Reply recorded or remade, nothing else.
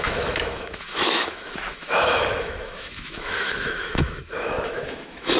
remade